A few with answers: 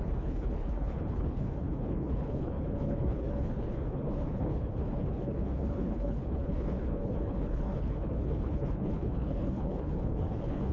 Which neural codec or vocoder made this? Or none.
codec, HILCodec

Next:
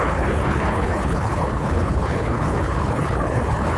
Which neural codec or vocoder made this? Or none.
codec, HILCodec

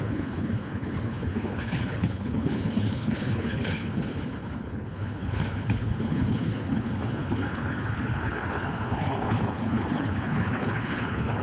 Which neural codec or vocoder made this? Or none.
codec, HILCodec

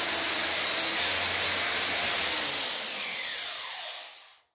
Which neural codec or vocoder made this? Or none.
none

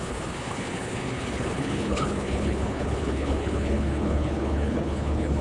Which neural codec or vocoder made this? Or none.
codec, HILCodec